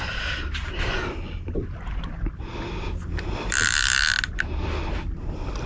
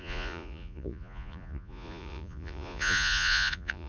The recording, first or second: first